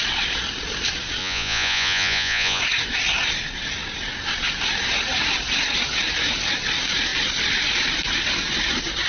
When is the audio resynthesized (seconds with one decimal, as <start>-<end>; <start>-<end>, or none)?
1.2-2.6